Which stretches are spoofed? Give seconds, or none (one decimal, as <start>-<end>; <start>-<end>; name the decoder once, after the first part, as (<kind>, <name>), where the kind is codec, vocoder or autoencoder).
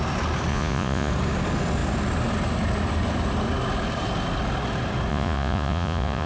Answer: 0.5-1.1 (vocoder, Vocos); 5.1-6.3